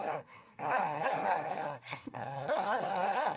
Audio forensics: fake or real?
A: fake